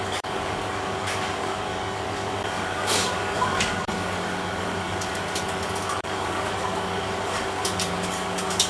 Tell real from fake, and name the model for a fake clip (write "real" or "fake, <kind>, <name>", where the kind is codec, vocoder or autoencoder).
fake, codec, DAC